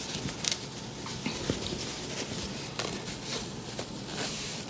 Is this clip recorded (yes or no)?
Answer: yes